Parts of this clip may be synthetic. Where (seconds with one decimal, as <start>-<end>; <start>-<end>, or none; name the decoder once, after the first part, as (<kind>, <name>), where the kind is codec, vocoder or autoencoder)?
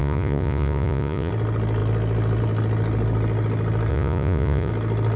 0.0-1.3 (vocoder, Vocos); 3.9-4.7